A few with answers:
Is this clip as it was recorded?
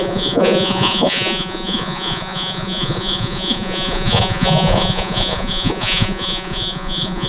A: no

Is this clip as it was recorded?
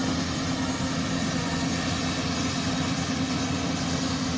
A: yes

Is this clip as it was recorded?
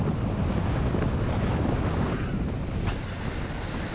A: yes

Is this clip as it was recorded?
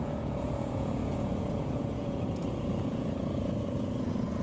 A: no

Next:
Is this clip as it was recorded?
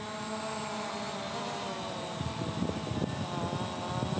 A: yes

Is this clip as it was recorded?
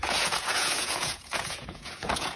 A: no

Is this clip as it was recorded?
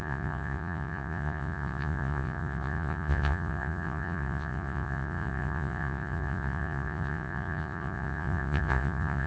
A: no